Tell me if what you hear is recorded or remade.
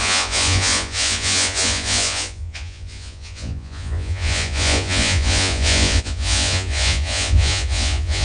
remade